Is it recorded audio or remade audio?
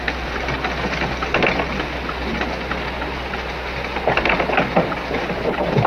recorded